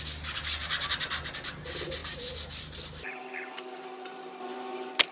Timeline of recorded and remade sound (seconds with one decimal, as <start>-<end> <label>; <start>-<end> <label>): 0.0-5.1 recorded